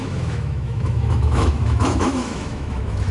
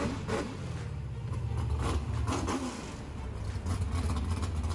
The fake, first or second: first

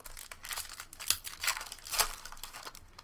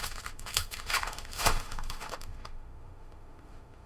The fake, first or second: second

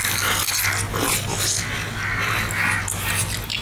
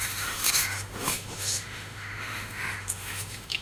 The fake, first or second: second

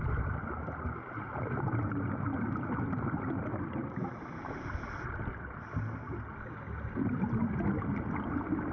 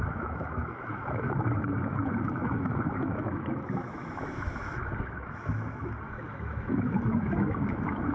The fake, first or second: second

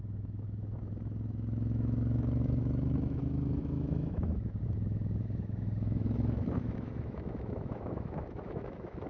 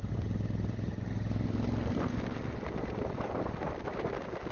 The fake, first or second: first